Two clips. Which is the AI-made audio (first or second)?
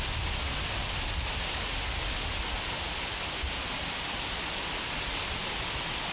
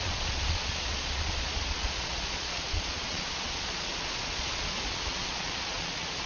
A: second